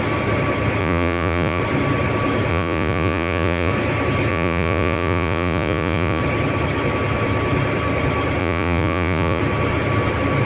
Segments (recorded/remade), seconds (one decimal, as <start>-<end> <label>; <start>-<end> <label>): 0.0-0.8 recorded; 0.8-1.6 remade; 1.6-2.5 recorded; 2.5-3.7 remade; 3.7-4.3 recorded; 4.3-6.2 remade; 6.2-8.4 recorded; 8.4-9.4 remade; 9.4-10.4 recorded